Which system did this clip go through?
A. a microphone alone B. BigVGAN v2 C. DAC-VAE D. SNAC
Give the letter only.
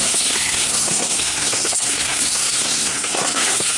D